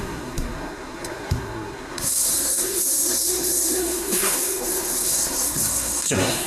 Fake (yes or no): yes